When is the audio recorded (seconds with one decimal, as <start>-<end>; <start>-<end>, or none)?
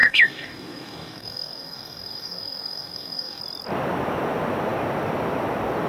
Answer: 3.4-5.9